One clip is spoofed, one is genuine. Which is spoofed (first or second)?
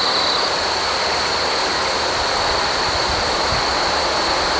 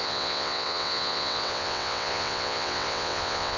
second